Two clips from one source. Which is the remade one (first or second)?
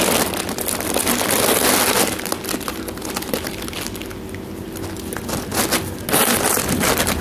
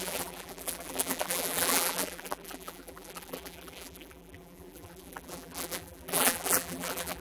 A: second